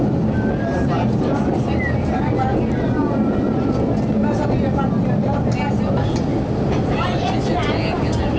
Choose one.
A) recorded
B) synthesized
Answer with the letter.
A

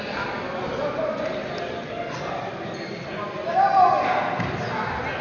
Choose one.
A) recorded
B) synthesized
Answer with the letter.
A